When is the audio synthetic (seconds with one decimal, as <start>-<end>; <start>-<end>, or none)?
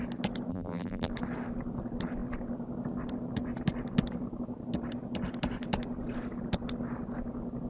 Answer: 0.5-1.1